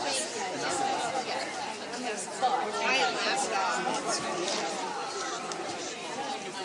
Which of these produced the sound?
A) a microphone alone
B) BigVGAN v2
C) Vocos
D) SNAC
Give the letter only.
A